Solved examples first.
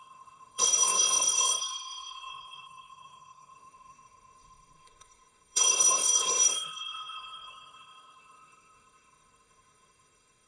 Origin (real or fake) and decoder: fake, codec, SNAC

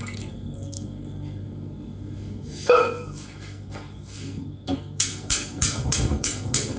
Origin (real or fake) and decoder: fake, codec, SNAC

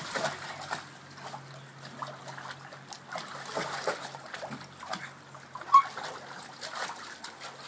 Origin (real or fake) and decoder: real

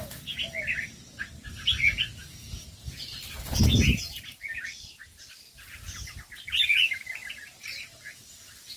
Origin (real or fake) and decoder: real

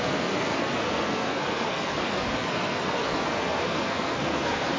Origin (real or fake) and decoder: fake, codec, SNAC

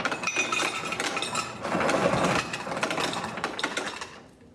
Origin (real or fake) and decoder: real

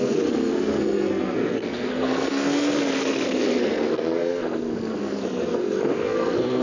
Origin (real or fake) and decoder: fake, codec, SNAC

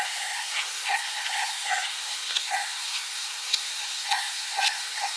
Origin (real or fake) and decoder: fake, codec, SNAC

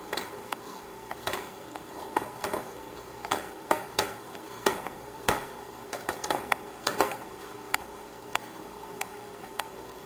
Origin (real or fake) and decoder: fake, codec, SNAC